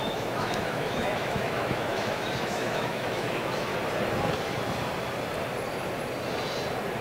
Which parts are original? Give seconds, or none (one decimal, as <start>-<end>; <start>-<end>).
3.7-7.0